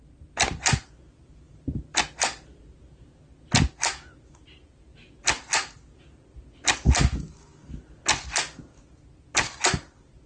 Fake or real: real